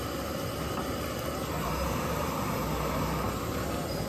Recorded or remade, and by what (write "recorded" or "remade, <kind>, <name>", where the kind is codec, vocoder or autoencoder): recorded